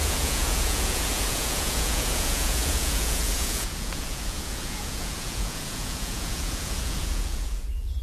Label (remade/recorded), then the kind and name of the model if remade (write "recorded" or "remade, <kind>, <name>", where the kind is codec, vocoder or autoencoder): remade, vocoder, Vocos